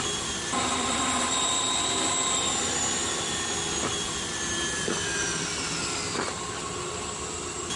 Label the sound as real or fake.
fake